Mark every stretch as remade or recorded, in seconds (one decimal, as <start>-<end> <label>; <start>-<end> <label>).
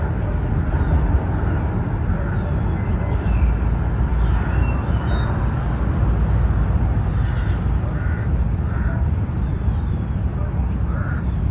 0.0-11.5 recorded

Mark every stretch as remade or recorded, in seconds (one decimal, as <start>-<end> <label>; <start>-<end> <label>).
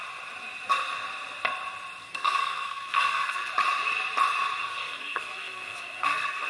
0.0-2.0 recorded; 2.0-3.5 remade; 3.5-4.7 recorded; 4.7-6.5 remade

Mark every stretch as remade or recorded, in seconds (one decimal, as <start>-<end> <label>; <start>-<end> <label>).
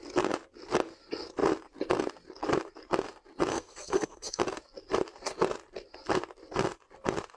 0.0-3.5 recorded; 3.5-4.4 remade; 4.4-7.4 recorded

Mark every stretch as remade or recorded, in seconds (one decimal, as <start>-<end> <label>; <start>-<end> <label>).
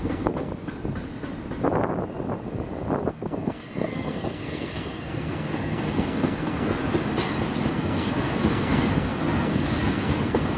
0.0-0.5 remade; 0.5-3.1 recorded; 3.1-6.8 remade; 6.8-7.7 recorded; 7.7-10.6 remade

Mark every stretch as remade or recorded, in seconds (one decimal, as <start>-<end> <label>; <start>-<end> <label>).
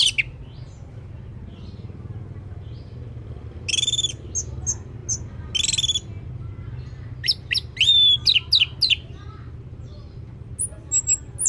0.0-11.5 recorded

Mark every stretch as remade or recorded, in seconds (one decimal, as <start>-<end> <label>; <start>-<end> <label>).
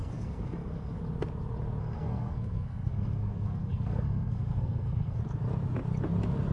0.0-1.0 remade; 1.0-1.8 recorded; 1.8-5.2 remade; 5.2-6.5 recorded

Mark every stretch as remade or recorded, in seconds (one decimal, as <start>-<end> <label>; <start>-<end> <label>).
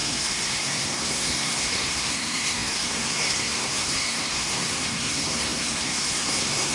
0.0-6.7 remade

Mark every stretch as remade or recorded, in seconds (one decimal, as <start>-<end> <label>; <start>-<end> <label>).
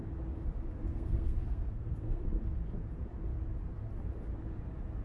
0.0-0.9 recorded; 0.9-2.2 remade; 2.2-5.0 recorded